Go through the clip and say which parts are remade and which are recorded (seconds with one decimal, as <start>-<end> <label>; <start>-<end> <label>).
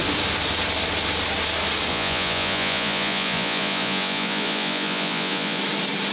0.0-1.9 recorded; 1.9-5.6 remade; 5.6-6.1 recorded